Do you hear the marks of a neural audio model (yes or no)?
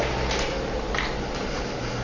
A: no